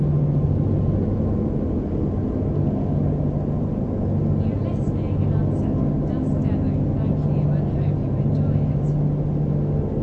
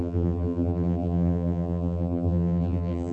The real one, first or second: first